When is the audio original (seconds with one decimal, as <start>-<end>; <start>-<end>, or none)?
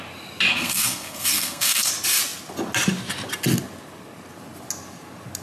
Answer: 0.0-0.5; 1.9-5.4